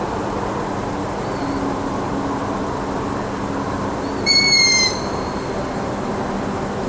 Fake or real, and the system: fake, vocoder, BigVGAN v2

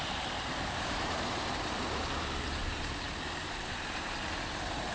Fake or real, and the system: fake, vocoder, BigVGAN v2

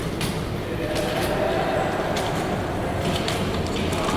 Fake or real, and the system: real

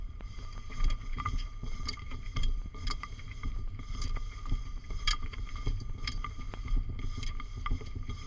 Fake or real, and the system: fake, vocoder, BigVGAN v2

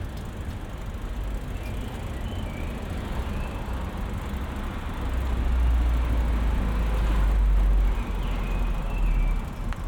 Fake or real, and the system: real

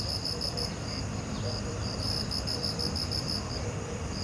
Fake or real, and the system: fake, vocoder, BigVGAN v2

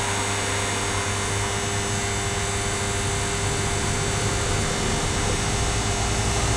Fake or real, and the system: real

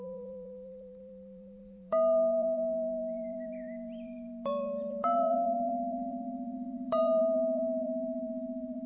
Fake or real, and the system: fake, vocoder, BigVGAN v2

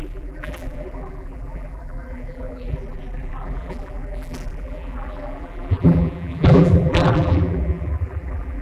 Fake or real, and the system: fake, vocoder, BigVGAN v2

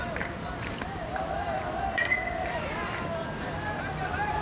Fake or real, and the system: fake, vocoder, BigVGAN v2